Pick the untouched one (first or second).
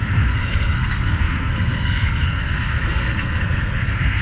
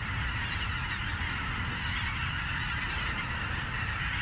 second